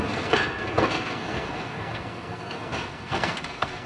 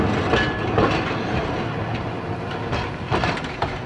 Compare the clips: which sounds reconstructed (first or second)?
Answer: first